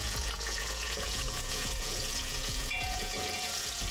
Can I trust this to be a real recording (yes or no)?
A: no